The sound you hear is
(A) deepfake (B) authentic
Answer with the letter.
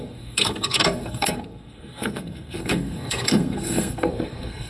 A